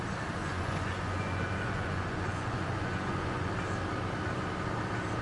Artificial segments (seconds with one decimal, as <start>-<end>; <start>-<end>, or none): 0.4-3.5